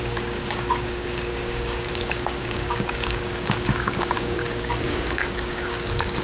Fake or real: fake